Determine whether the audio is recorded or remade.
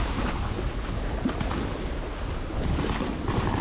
recorded